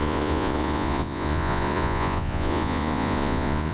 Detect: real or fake fake